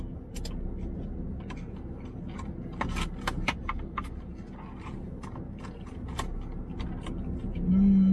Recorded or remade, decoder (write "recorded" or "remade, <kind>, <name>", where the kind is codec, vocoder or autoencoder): recorded